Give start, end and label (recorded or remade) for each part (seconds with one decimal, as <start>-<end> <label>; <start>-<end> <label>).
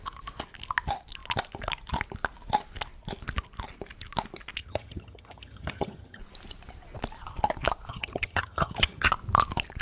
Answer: 0.0-4.6 recorded; 4.6-6.2 remade; 6.2-7.9 recorded; 7.9-9.1 remade; 9.1-9.8 recorded